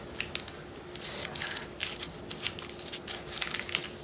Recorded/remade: recorded